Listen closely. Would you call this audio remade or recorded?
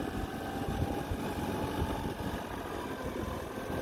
recorded